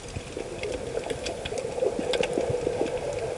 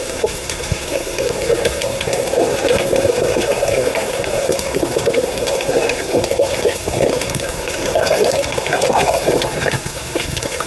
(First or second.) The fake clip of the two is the second